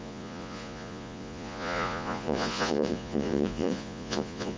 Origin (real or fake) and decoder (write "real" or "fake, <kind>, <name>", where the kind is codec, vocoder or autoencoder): fake, vocoder, Vocos